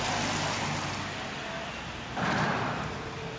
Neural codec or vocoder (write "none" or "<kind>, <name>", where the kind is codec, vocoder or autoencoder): none